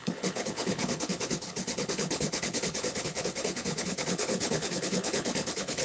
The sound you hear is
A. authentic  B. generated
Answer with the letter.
B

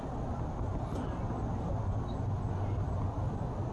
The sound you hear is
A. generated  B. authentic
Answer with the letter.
B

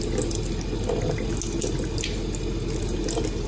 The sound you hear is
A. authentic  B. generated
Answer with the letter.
A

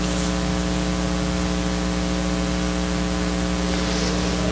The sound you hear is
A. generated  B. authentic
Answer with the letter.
B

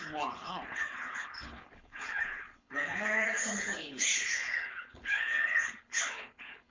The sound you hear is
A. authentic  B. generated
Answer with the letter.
B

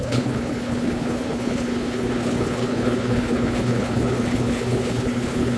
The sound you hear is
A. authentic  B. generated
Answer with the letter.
B